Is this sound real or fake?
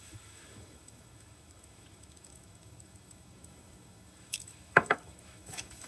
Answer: fake